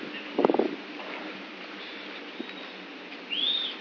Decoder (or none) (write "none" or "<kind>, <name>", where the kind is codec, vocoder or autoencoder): none